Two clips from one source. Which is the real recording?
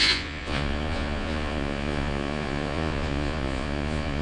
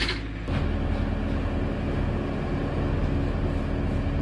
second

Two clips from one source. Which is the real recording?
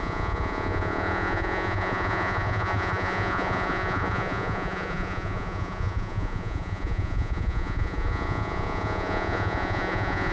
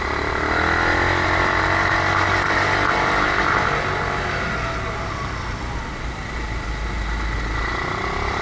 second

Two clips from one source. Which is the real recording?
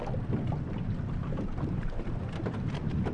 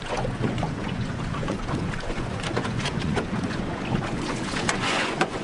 first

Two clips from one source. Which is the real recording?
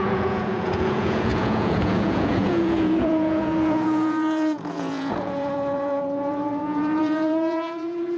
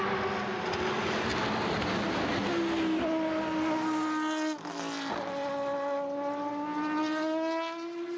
second